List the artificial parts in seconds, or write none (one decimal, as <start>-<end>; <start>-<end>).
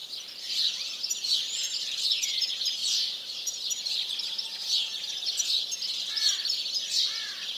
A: 0.0-1.1; 1.7-2.3; 2.8-6.1